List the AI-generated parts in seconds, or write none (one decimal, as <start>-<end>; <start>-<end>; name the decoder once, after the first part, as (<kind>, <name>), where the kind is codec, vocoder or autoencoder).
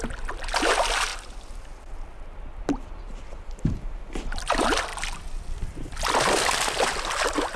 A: none